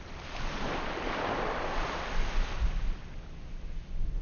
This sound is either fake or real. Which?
real